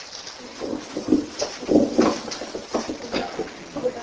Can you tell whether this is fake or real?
real